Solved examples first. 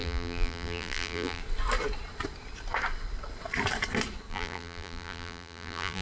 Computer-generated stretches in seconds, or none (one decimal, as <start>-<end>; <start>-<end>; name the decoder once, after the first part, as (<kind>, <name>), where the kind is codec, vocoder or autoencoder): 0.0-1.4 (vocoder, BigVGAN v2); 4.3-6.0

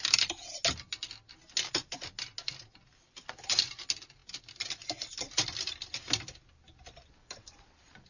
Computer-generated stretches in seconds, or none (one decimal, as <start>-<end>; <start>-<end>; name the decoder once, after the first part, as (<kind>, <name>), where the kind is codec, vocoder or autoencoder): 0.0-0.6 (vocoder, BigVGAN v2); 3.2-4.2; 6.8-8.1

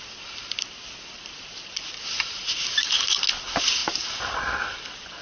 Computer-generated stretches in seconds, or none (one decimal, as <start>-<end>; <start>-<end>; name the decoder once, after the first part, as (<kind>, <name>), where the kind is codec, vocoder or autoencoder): none

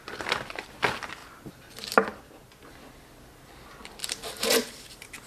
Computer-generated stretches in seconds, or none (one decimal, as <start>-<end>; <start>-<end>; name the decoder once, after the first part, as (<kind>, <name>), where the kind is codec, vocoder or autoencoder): 1.2-1.7 (vocoder, BigVGAN v2); 2.1-2.7; 4.0-5.3